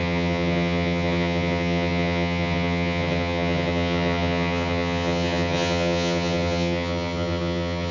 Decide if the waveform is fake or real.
fake